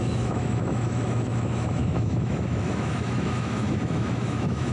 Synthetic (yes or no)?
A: yes